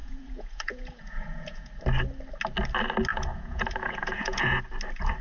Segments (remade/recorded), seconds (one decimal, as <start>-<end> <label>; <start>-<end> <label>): 0.0-1.7 remade; 1.7-3.1 recorded; 3.1-4.6 remade; 4.6-5.2 recorded